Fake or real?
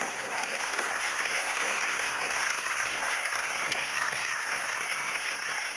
fake